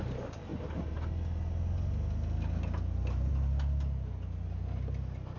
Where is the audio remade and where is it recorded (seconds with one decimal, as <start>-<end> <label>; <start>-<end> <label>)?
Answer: 0.0-5.4 recorded